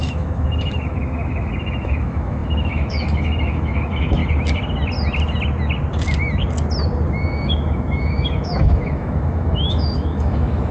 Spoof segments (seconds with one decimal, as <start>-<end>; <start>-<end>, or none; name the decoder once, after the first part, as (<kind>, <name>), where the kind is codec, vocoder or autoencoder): 0.0-4.2 (autoencoder, DAC-VAE); 7.1-10.7